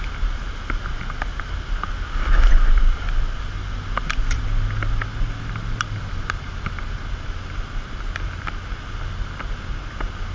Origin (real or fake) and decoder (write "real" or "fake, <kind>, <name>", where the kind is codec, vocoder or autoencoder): real